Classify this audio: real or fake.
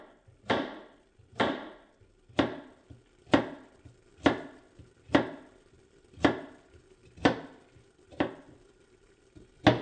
real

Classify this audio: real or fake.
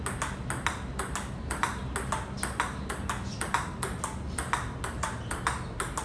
real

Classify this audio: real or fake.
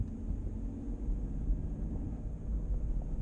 real